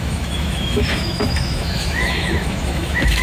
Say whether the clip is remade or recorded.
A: remade